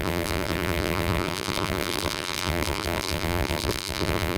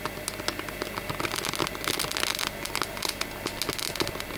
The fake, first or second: first